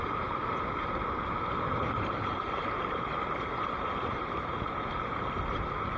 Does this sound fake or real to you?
real